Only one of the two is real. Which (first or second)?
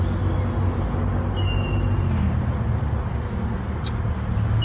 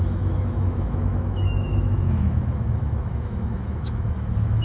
first